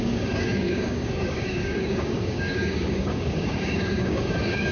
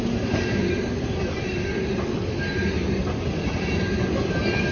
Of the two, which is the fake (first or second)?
first